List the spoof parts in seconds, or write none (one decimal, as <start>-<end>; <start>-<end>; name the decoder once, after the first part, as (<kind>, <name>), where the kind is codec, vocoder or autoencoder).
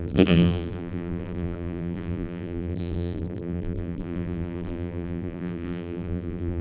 0.0-6.6 (vocoder, BigVGAN v2)